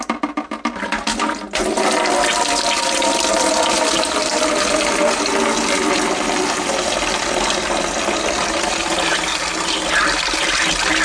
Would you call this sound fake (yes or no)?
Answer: no